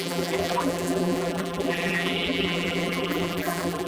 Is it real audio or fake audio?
fake